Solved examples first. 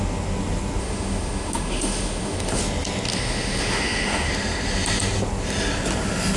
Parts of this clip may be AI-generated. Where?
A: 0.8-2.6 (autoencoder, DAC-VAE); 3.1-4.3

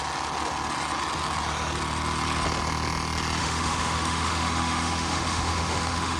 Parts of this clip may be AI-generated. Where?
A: 3.4-6.2 (autoencoder, DAC-VAE)

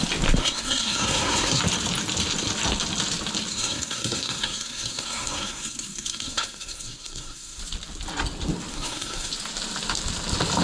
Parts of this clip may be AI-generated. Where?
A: 0.4-1.6 (codec, SNAC); 3.5-7.6; 8.7-9.3

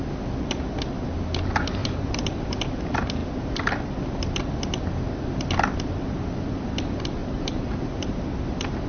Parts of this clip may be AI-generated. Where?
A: 1.8-2.6 (vocoder, BigVGAN v2); 7.2-8.2

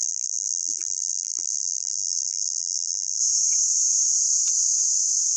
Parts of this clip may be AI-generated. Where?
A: 0.0-3.2 (vocoder, BigVGAN v2)

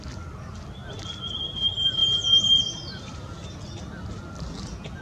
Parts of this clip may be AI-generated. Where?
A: 0.8-1.6 (vocoder, BigVGAN v2)

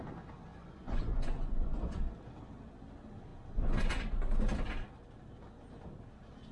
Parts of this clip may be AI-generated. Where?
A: 0.5-2.0 (vocoder, Vocos)